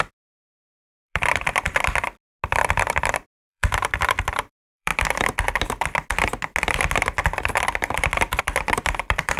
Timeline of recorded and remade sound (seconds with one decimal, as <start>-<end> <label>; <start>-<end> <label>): 0.0-2.2 remade; 2.2-2.7 recorded; 2.7-4.9 remade; 4.9-8.4 recorded; 8.4-9.4 remade